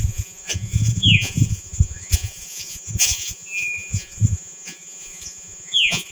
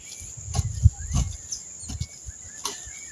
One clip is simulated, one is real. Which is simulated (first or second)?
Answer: first